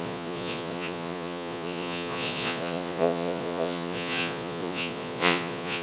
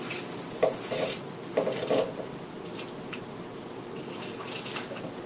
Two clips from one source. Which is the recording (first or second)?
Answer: second